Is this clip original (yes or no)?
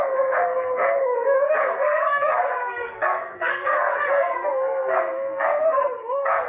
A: no